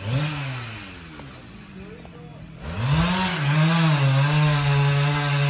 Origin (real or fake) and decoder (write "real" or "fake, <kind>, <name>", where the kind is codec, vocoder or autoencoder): real